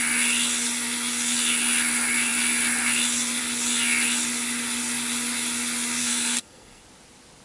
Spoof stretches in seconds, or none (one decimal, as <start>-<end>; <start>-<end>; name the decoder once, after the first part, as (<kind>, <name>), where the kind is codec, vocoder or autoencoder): 6.0-6.8 (codec, SNAC)